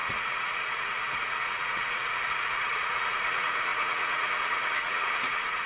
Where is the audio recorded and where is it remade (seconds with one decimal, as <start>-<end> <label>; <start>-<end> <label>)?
0.0-5.7 remade